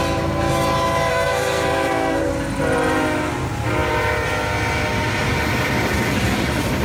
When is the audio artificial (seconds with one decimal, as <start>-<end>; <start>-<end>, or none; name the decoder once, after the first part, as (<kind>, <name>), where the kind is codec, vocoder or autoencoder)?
1.1-2.3 (codec, SNAC)